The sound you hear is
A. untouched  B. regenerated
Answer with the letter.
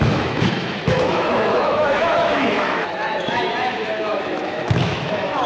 B